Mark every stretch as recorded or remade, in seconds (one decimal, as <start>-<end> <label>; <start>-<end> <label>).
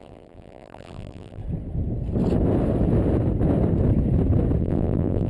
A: 0.0-1.4 remade; 1.4-4.6 recorded; 4.6-5.3 remade